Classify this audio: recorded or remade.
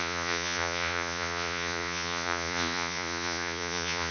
remade